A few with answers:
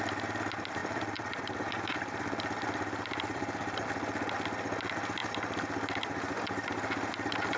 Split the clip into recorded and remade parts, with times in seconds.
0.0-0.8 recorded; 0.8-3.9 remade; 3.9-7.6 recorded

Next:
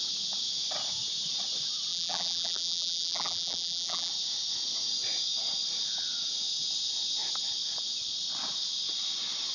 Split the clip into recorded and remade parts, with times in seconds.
0.0-1.9 recorded; 1.9-4.1 remade; 4.1-9.5 recorded

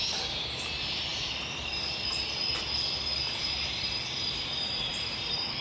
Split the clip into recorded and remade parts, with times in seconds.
0.0-1.1 remade; 1.1-4.5 recorded; 4.5-5.6 remade

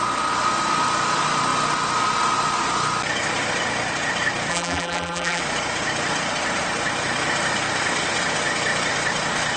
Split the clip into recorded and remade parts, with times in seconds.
0.0-4.5 recorded; 4.5-5.4 remade; 5.4-9.6 recorded

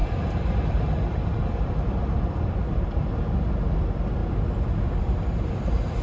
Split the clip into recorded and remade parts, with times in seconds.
0.0-4.2 remade; 4.2-5.0 recorded; 5.0-6.0 remade

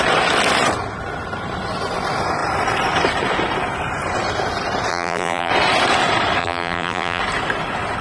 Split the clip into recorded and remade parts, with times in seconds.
0.0-4.9 recorded; 4.9-5.5 remade; 5.5-6.4 recorded; 6.4-7.2 remade; 7.2-8.0 recorded

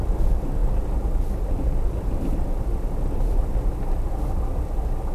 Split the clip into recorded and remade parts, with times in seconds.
0.0-5.1 recorded

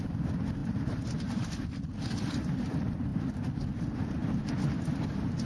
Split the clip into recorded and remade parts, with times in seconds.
0.0-0.6 recorded; 0.6-1.5 remade; 1.5-5.5 recorded